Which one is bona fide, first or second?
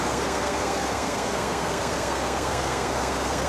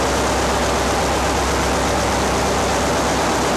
second